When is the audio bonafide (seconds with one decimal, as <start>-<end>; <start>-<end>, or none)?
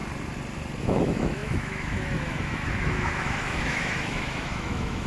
0.0-0.8